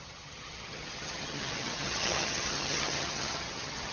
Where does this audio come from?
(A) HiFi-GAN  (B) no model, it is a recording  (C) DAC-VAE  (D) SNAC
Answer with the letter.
A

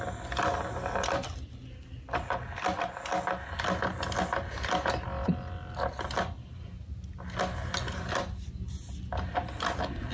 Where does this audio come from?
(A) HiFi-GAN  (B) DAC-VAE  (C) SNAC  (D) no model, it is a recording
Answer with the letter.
D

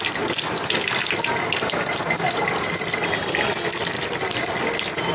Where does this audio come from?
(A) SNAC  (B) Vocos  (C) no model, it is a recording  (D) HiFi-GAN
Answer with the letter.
C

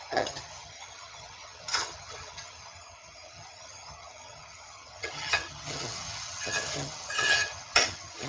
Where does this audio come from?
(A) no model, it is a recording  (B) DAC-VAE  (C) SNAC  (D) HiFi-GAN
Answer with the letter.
D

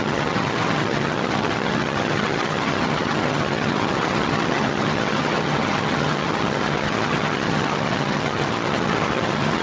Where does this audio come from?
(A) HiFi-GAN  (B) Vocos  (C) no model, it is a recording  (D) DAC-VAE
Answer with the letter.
A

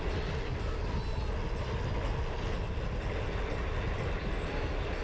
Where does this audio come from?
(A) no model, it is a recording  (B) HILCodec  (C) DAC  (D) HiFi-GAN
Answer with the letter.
A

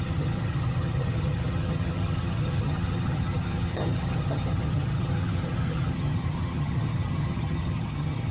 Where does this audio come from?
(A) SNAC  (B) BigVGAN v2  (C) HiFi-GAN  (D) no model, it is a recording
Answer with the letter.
C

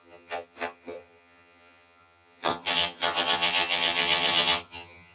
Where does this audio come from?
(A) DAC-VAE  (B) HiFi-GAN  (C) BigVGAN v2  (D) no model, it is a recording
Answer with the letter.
B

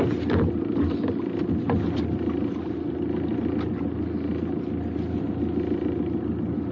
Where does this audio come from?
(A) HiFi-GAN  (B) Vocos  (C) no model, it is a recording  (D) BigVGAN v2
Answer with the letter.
C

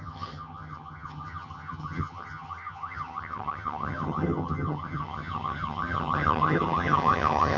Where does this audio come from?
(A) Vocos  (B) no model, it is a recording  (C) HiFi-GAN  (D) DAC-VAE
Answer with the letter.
C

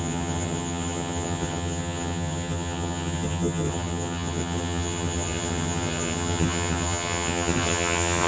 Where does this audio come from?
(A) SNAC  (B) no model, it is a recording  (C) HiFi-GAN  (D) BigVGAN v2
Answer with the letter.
C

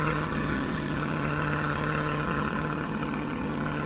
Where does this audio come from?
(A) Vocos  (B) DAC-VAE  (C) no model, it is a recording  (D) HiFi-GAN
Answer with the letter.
D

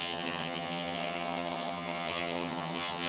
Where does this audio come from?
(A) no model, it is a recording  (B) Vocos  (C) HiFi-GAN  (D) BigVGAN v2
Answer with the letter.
C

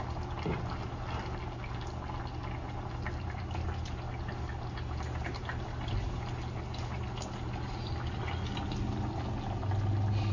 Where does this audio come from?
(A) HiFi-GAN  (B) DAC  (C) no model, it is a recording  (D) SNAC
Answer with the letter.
C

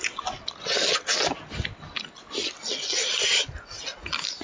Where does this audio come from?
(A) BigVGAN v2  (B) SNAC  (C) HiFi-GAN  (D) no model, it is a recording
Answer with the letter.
D